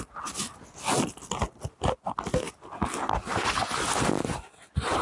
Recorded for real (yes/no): yes